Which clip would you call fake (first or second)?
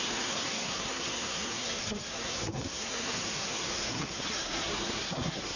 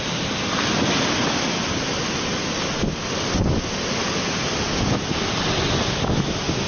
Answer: first